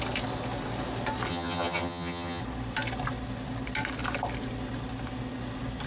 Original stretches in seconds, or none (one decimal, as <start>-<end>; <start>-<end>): 0.0-1.3; 2.4-5.9